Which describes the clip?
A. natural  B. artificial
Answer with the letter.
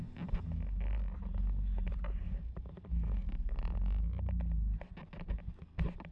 A